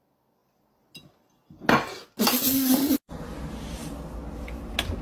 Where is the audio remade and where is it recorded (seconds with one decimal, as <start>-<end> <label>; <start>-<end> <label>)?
0.0-5.0 recorded